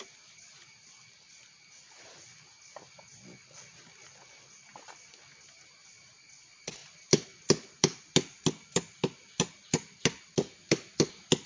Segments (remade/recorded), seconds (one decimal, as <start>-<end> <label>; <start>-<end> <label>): 0.0-11.5 recorded